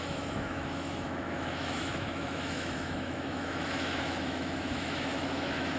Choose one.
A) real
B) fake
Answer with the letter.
B